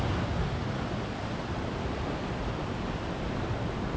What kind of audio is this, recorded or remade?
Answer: recorded